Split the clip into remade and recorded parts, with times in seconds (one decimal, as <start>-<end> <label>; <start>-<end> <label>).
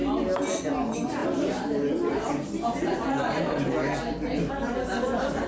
0.0-5.5 recorded